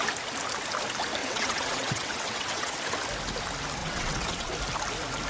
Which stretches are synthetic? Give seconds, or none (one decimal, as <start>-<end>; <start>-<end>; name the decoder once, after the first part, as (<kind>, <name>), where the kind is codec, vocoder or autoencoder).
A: 1.2-2.8 (vocoder, WaveNeXt); 3.8-4.5